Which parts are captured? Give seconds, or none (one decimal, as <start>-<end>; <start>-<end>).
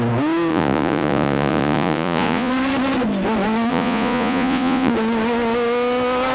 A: 0.0-0.5; 2.5-3.7; 4.9-6.3